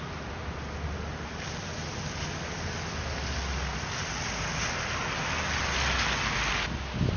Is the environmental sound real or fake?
real